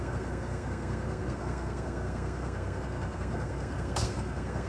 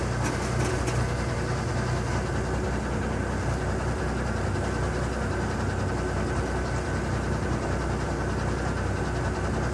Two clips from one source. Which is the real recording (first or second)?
second